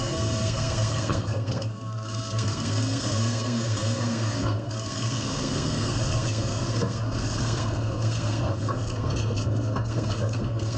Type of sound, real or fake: fake